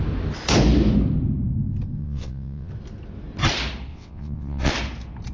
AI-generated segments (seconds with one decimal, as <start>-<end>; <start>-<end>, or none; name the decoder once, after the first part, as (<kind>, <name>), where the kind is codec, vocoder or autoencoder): 2.0-2.7 (vocoder, WaveNeXt); 3.9-4.7